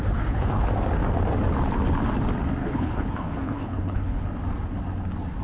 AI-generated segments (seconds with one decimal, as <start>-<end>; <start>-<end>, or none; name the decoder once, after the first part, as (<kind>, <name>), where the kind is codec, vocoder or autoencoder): 0.0-0.7 (codec, HILCodec); 2.6-4.2